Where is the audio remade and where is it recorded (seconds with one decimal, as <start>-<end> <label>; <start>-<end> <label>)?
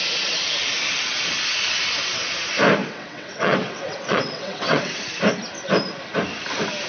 0.0-2.8 recorded; 2.8-5.0 remade; 5.0-6.9 recorded